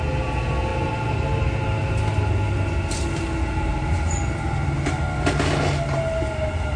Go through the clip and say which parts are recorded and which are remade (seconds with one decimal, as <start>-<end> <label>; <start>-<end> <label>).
0.0-6.8 recorded